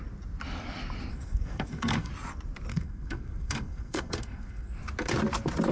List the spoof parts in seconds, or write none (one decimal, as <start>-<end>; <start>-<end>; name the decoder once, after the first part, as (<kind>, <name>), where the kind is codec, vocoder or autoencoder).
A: 1.1-2.1 (codec, SNAC); 2.7-4.8